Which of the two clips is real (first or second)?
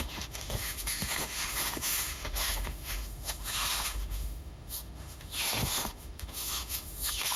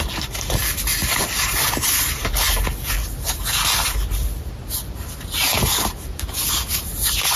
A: second